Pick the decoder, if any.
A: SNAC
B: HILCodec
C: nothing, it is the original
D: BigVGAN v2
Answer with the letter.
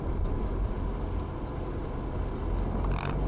C